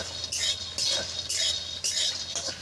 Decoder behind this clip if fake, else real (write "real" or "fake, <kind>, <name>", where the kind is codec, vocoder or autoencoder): real